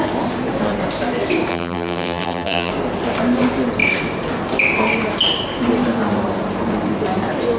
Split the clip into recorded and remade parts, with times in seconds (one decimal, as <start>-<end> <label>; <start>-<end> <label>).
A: 0.0-1.5 recorded; 1.5-2.7 remade; 2.7-7.6 recorded